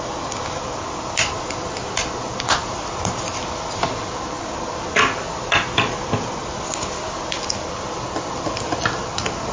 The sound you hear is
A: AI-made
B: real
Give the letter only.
B